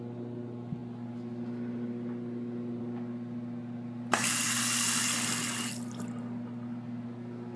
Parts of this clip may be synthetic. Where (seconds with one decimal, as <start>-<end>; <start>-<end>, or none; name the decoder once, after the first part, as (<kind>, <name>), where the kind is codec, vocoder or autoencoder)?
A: none